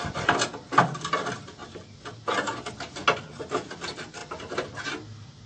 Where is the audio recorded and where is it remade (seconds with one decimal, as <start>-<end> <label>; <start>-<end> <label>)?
0.0-5.5 recorded